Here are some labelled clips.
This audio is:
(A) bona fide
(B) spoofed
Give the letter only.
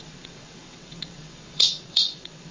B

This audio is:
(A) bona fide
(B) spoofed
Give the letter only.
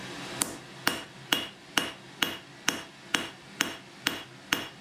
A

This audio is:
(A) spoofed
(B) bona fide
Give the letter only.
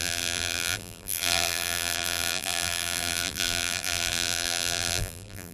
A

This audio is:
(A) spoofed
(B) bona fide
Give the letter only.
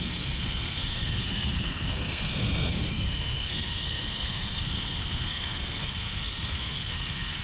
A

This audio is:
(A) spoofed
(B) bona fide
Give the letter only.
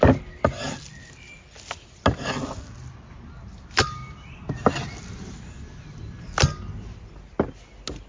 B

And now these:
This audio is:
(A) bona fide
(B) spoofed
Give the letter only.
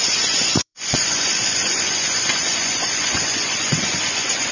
B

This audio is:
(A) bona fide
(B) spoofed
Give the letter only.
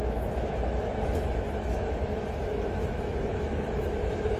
B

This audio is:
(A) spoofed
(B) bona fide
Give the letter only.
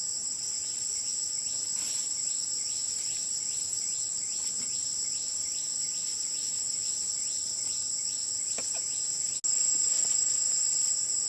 B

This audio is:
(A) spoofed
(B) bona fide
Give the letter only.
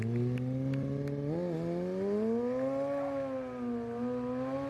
B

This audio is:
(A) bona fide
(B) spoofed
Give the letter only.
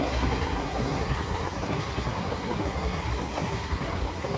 B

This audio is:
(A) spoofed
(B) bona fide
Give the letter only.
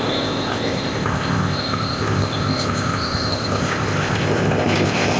A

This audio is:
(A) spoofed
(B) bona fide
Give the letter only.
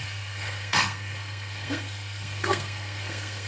A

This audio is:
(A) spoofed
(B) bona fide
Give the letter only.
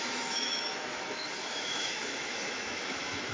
A